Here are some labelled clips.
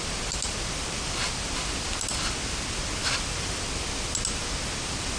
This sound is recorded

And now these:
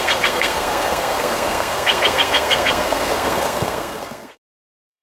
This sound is remade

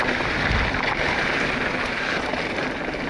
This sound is recorded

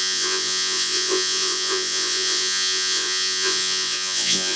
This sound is remade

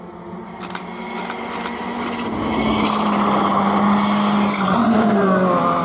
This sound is recorded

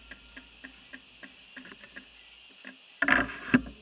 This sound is recorded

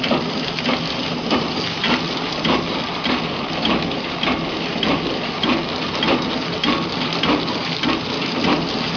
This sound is recorded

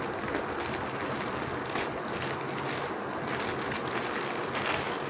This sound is recorded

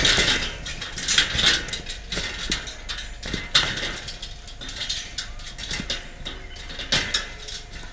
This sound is recorded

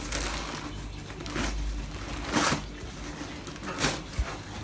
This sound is recorded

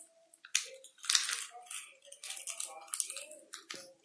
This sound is recorded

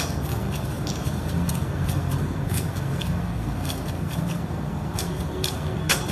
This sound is remade